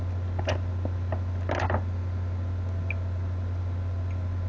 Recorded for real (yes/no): yes